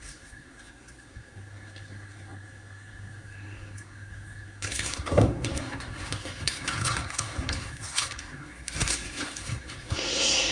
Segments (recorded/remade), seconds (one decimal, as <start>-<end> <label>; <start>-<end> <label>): 0.0-10.5 remade